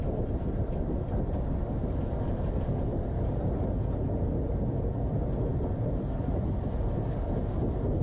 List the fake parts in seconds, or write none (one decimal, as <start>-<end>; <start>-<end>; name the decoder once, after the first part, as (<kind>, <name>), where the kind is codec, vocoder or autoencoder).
none